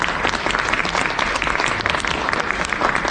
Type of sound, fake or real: real